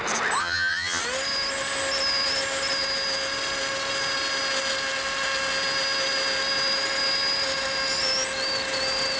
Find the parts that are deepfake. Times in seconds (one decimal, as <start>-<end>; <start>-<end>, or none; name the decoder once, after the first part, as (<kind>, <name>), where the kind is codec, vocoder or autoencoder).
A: 0.4-1.0 (vocoder, HiFi-GAN)